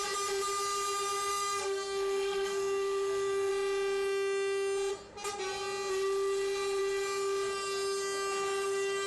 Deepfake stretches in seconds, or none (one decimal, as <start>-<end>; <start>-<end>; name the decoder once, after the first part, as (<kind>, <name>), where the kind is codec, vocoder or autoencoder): 1.3-3.5 (codec, SNAC)